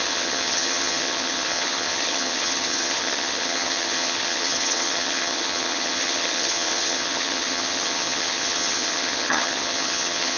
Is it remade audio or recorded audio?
remade